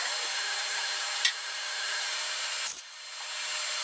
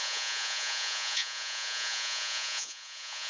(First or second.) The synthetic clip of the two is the second